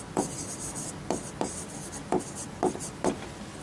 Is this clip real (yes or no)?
yes